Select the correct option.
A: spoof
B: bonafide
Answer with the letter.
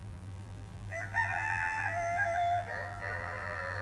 A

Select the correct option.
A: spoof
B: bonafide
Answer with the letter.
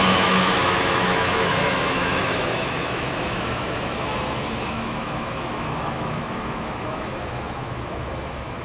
A